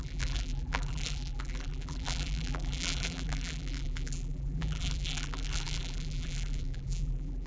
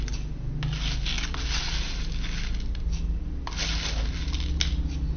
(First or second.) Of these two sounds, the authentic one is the second